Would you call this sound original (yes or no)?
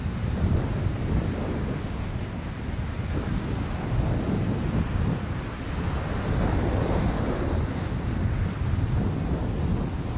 yes